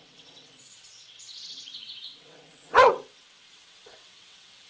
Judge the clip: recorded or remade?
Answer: remade